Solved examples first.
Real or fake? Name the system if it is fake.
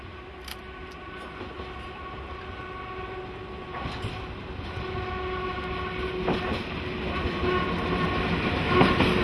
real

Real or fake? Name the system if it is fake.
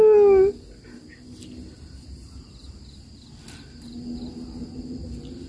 real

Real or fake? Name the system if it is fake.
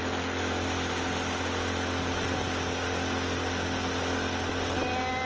real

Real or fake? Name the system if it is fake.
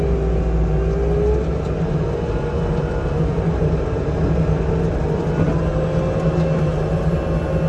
real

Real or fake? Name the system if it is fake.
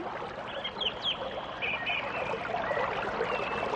real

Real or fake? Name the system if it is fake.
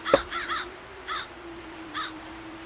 fake, vocoder, BigVGAN v2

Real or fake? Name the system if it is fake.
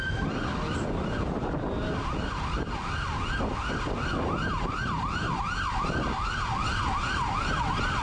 real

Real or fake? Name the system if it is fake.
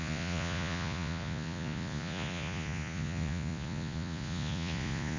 fake, vocoder, Vocos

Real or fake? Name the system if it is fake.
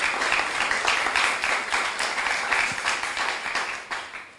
real